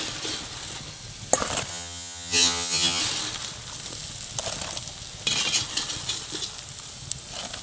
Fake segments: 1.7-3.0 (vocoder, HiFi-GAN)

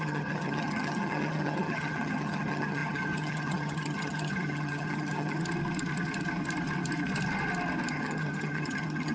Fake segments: 0.0-5.4 (vocoder, HiFi-GAN); 7.9-9.1

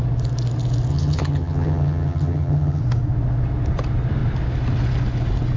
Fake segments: 0.9-2.8 (vocoder, HiFi-GAN)

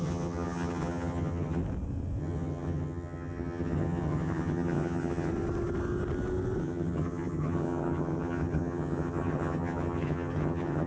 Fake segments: 0.0-1.6 (vocoder, HiFi-GAN); 2.2-5.3; 6.6-10.9

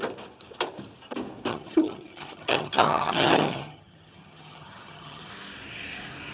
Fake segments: 1.5-5.3 (vocoder, HiFi-GAN)

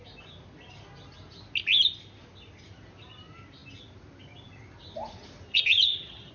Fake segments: 5.5-6.3 (vocoder, HiFi-GAN)